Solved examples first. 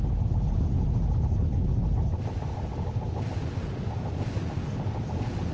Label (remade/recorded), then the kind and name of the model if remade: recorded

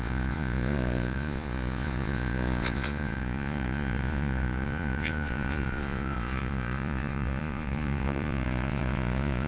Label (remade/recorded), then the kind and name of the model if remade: remade, vocoder, Vocos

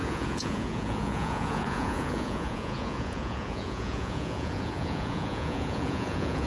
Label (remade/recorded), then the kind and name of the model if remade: remade, vocoder, Vocos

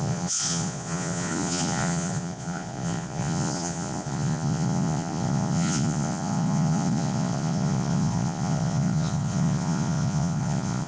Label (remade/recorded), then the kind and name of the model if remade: remade, vocoder, Vocos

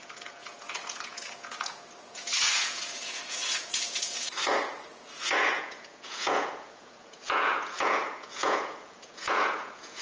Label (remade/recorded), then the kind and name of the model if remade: remade, vocoder, Vocos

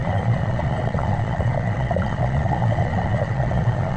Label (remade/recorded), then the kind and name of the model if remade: remade, vocoder, Vocos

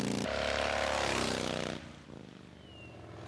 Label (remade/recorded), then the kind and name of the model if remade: recorded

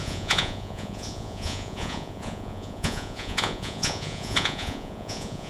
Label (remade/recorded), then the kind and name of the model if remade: remade, vocoder, Vocos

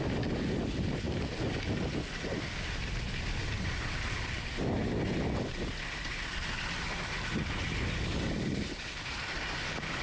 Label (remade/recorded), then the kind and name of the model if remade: recorded